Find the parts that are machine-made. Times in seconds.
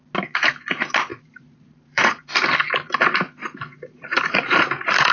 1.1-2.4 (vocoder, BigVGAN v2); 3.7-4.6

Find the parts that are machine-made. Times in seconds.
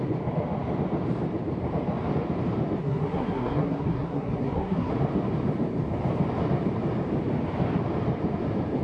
2.8-4.9 (codec, SNAC)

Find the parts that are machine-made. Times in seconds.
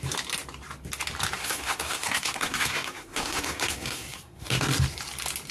1.4-4.7 (codec, SNAC)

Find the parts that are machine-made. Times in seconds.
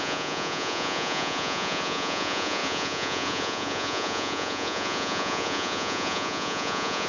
0.0-7.1 (vocoder, Vocos)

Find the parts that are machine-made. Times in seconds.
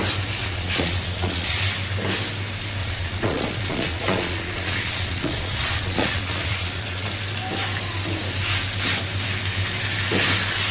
0.4-1.6 (vocoder, Vocos); 2.8-7.1